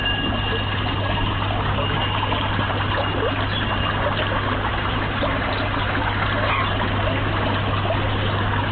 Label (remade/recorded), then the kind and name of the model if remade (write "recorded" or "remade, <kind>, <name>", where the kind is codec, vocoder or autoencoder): recorded